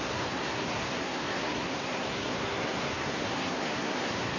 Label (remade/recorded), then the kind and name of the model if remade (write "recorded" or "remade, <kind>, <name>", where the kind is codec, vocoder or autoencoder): remade, codec, SNAC